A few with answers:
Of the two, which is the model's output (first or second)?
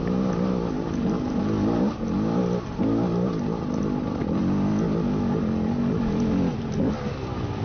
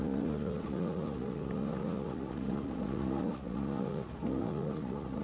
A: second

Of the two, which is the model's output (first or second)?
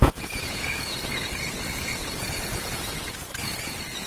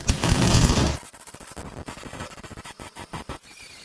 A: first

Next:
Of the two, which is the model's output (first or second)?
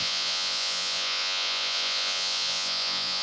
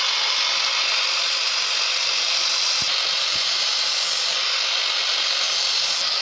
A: first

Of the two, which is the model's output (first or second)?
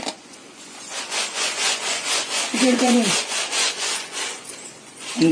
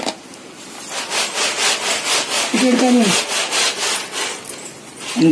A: first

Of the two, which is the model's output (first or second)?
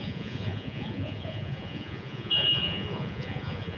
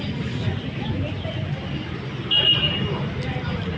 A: first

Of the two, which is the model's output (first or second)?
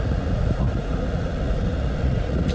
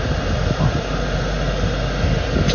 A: first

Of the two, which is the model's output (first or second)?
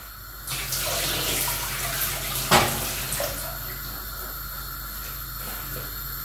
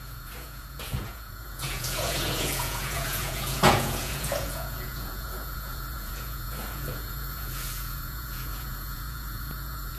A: second